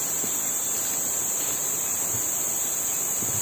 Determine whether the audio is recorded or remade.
recorded